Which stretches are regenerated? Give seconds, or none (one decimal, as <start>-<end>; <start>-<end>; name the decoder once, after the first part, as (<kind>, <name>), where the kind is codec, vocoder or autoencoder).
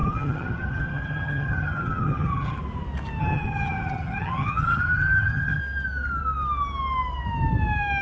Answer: 0.0-2.6 (vocoder, HiFi-GAN); 3.2-5.6